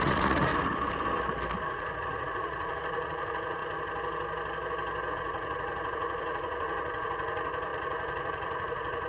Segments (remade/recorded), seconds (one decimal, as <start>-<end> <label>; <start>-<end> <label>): 0.0-0.5 remade; 0.5-1.6 recorded; 1.6-3.6 remade; 3.6-5.1 recorded; 5.1-9.1 remade